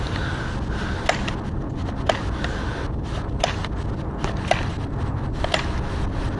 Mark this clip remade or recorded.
recorded